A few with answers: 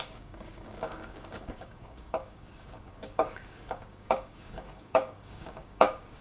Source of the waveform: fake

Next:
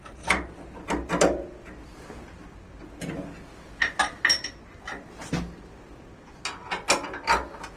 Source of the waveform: real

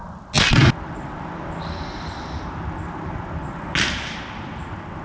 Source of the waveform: real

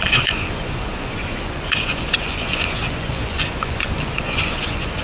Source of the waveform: fake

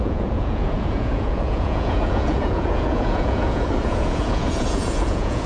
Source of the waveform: fake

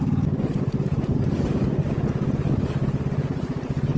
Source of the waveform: real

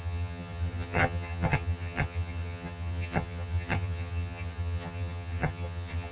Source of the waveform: fake